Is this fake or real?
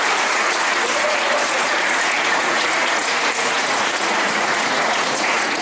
fake